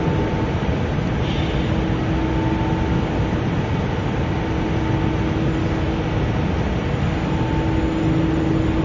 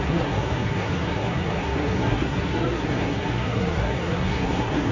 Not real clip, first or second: second